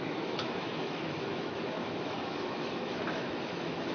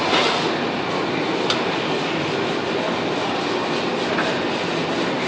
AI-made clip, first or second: first